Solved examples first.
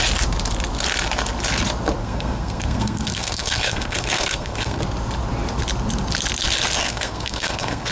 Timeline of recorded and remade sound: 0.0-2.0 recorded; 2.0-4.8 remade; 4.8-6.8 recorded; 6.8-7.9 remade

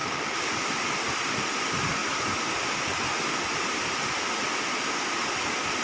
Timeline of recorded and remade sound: 0.0-5.8 recorded

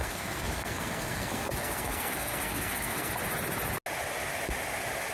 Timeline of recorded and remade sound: 0.0-3.1 remade; 3.1-5.1 recorded

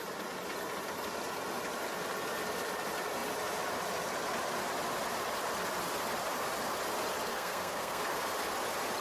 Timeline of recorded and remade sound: 0.0-7.3 recorded; 7.3-8.0 remade; 8.0-9.0 recorded

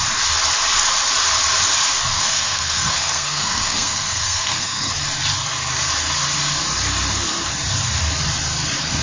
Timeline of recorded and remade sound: 0.0-2.2 recorded; 2.2-4.9 remade; 4.9-9.0 recorded

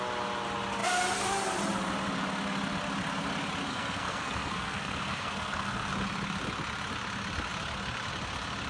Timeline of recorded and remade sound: 0.0-3.7 recorded; 3.7-5.9 remade; 5.9-8.7 recorded